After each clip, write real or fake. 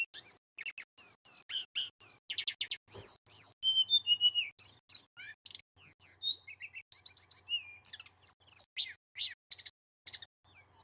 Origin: real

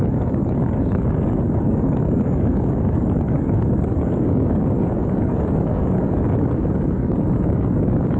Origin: fake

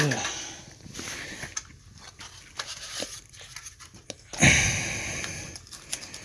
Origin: real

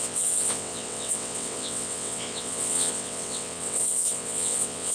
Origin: fake